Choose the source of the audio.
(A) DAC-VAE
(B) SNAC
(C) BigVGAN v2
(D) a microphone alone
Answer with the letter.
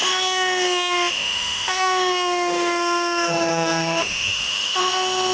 A